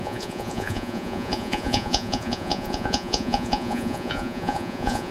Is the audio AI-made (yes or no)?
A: yes